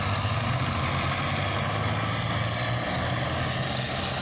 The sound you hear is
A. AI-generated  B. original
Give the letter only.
B